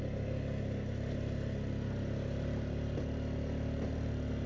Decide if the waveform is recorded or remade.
recorded